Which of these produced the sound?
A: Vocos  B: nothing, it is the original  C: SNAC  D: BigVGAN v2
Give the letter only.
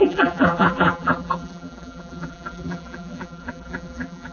D